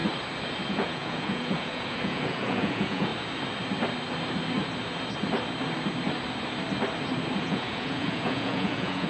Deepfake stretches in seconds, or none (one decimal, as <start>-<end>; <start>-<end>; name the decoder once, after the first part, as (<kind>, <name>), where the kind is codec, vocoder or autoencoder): 0.7-3.1 (vocoder, Vocos); 7.4-9.1